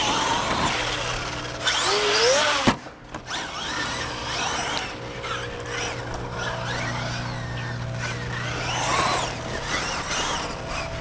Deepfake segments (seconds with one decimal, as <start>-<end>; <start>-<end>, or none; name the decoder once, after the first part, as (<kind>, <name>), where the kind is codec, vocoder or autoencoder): none